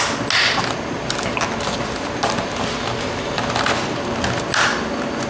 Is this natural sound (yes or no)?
yes